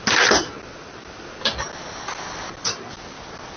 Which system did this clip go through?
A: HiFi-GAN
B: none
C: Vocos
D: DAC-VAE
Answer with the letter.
B